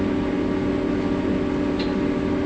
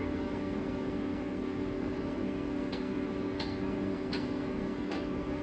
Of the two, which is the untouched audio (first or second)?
first